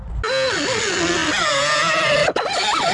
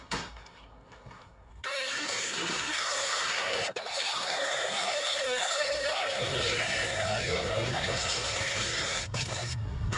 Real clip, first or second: first